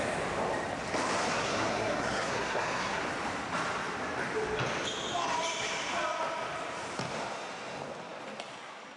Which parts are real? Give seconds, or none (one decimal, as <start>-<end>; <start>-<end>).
0.0-1.4; 3.0-9.0